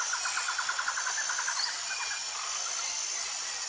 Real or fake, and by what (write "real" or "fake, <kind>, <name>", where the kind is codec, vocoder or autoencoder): real